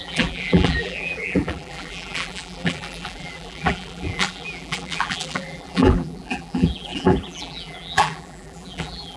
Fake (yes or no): yes